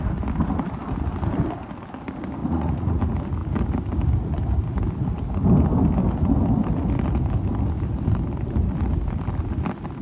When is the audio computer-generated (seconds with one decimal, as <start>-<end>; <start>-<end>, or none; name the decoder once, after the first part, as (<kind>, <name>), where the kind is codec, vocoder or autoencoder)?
2.4-3.0 (vocoder, Vocos)